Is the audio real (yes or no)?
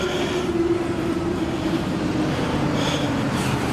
no